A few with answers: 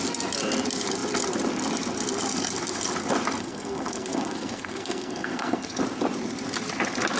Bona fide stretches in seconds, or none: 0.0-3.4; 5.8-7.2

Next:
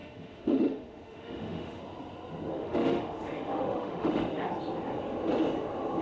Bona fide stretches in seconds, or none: 1.8-2.5; 4.5-6.0

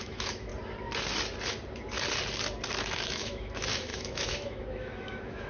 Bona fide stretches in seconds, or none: 0.5-2.8

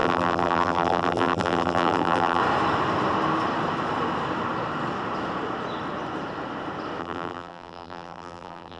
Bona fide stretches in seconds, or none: 2.4-7.0

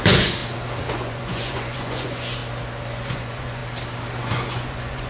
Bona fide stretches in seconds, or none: 0.4-0.9; 2.4-2.9; 3.6-4.2

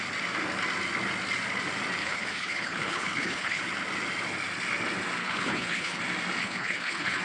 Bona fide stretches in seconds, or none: 0.0-2.0; 3.6-5.2; 6.0-6.4

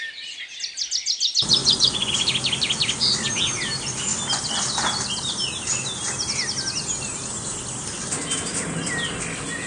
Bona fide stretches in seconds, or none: 0.0-1.6; 2.1-9.7